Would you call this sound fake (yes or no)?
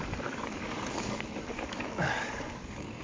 yes